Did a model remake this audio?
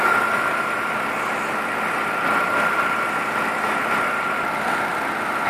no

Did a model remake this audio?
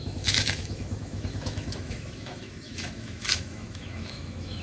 yes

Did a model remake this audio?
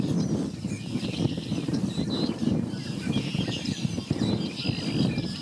yes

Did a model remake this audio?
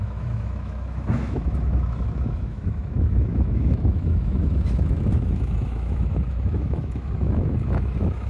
yes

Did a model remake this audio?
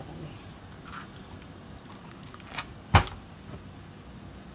no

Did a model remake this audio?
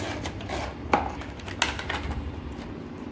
no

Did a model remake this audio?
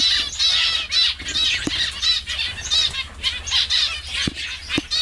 no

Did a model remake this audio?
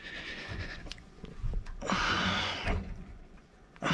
yes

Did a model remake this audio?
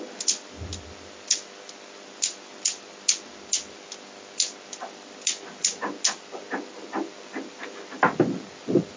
no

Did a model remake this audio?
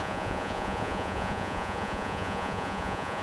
yes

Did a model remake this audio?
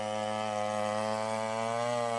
no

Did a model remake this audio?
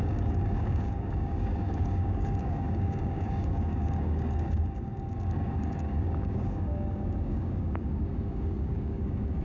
yes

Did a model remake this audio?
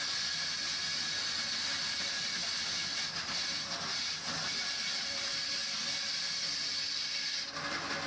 no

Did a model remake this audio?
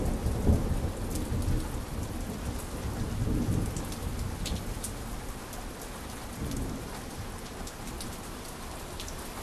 no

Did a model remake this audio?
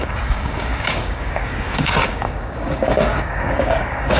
yes